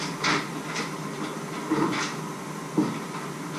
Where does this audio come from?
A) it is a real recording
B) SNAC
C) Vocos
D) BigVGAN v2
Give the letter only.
A